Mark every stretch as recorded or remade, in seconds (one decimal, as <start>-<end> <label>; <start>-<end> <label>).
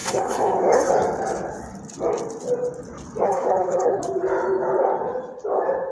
0.0-0.9 remade; 0.9-3.2 recorded; 3.2-4.0 remade; 4.0-5.9 recorded